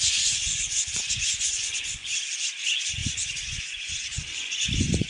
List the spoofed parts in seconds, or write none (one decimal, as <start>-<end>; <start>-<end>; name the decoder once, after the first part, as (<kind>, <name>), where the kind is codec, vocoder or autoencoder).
0.0-2.1 (vocoder, Vocos); 2.6-5.1